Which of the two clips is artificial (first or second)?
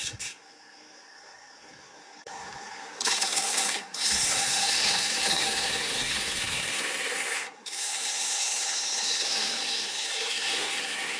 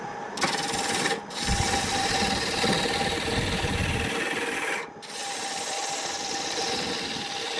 first